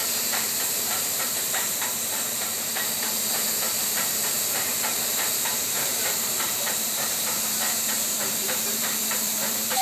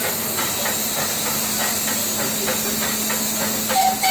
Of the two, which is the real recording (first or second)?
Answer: second